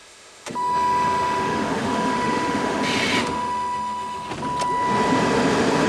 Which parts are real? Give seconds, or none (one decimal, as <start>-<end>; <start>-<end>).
2.8-3.2; 4.3-5.9